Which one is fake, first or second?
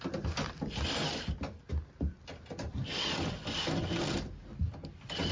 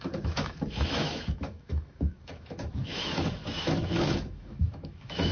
second